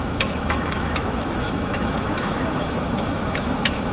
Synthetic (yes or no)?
yes